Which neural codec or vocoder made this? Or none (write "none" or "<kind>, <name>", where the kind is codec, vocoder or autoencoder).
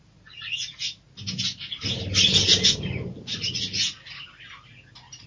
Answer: none